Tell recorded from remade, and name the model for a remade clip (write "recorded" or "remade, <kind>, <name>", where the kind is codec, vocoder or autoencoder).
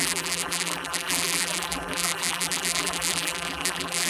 remade, vocoder, BigVGAN v2